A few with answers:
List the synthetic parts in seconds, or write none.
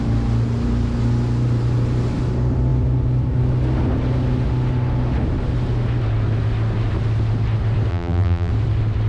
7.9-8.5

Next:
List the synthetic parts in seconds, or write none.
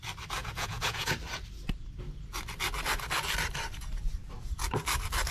0.4-1.1